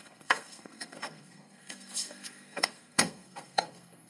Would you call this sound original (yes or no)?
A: no